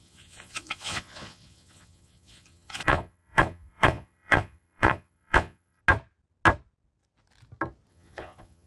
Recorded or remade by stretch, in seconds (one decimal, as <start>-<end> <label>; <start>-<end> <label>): 0.0-5.8 remade; 5.8-7.9 recorded; 7.9-8.7 remade